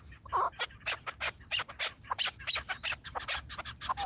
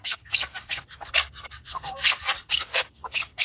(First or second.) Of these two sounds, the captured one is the first